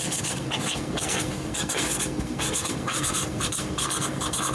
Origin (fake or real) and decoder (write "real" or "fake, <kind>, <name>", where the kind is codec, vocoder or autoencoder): fake, codec, SNAC